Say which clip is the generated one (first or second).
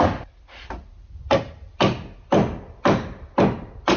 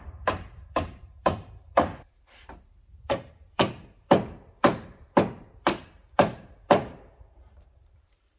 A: second